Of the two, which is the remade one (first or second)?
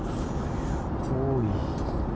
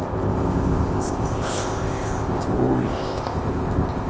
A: second